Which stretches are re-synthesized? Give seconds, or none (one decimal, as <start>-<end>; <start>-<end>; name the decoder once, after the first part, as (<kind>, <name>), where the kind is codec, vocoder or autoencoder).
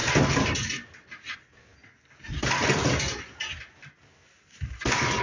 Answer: none